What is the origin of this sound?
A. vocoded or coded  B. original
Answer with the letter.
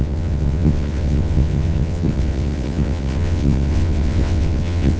A